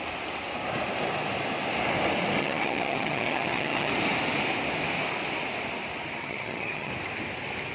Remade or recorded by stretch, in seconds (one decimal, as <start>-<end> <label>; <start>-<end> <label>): 0.0-2.4 recorded; 2.4-3.9 remade; 3.9-6.2 recorded; 6.2-6.9 remade; 6.9-7.7 recorded